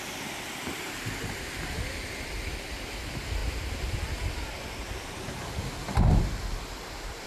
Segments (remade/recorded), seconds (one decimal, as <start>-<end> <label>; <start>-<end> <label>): 0.0-7.3 recorded